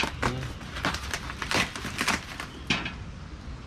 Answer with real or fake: real